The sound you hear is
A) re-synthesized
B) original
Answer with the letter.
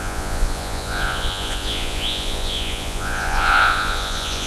A